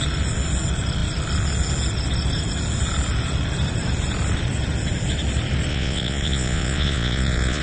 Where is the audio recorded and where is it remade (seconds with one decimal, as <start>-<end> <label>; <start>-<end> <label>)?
0.0-5.7 recorded; 5.7-7.6 remade